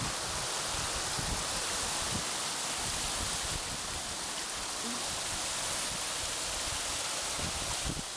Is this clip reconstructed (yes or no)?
no